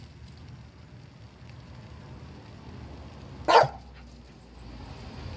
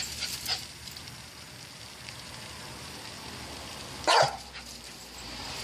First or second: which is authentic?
first